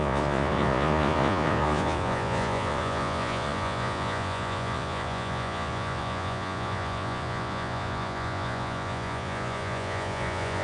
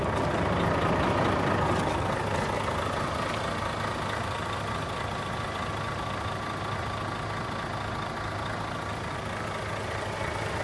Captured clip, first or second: second